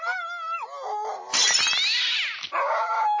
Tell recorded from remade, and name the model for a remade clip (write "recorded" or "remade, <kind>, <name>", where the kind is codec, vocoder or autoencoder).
recorded